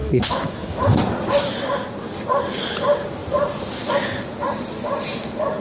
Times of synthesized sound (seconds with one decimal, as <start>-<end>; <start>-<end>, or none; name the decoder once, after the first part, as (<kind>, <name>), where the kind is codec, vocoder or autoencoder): 0.0-1.0 (autoencoder, DAC-VAE)